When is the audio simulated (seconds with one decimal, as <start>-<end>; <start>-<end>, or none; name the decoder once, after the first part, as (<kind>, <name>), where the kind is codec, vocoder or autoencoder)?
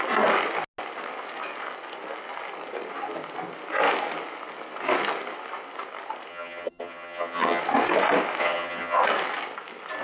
6.3-7.6 (vocoder, HiFi-GAN); 8.4-9.0